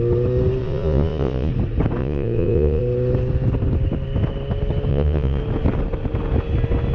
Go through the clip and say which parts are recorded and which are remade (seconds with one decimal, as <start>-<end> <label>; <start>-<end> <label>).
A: 0.0-0.6 recorded; 0.6-1.5 remade; 1.5-2.0 recorded; 2.0-2.8 remade; 2.8-4.9 recorded; 4.9-5.4 remade; 5.4-6.9 recorded